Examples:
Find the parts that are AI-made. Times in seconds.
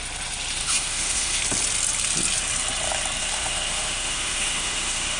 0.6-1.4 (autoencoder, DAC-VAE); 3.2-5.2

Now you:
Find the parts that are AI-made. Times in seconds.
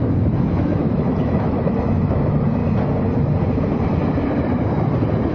0.0-2.6 (autoencoder, DAC-VAE)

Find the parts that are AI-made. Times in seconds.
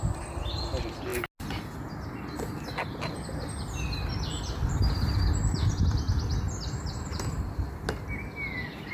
none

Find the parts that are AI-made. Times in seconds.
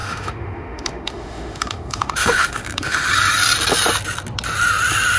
0.0-3.1 (autoencoder, DAC-VAE)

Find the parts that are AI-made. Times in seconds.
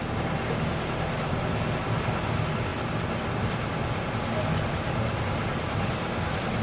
none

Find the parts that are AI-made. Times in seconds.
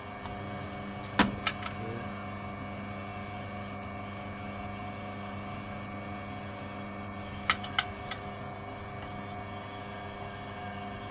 none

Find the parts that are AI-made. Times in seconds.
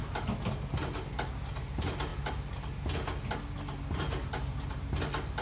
0.0-0.5 (autoencoder, DAC-VAE)